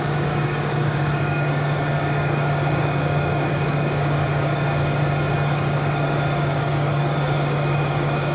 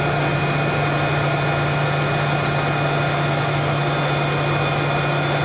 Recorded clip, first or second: second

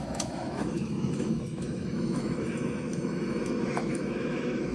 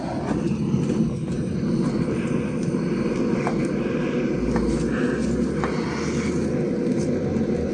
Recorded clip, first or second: second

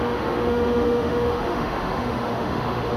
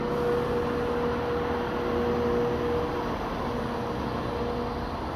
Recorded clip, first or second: second